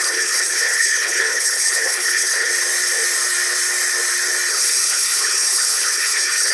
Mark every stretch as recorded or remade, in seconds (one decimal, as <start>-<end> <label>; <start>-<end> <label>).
0.0-2.5 remade; 2.5-4.5 recorded; 4.5-6.5 remade